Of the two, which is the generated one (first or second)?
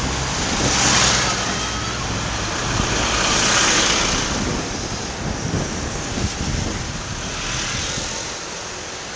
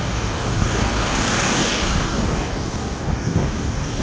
second